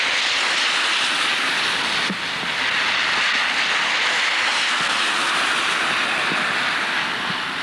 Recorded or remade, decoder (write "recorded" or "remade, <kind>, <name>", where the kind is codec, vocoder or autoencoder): recorded